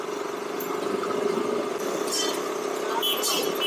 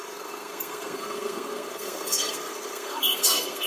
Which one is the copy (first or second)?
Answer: second